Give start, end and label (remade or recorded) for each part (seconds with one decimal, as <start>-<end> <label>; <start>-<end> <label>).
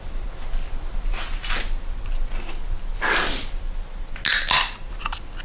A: 0.0-5.4 recorded